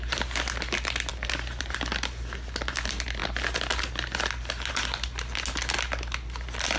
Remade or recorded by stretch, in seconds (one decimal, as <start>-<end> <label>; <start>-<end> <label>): 0.0-6.8 recorded